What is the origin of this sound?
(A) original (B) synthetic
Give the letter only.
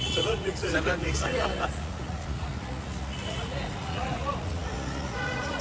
B